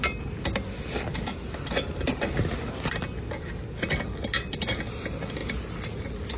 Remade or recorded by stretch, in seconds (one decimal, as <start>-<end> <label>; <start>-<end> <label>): 0.0-6.4 recorded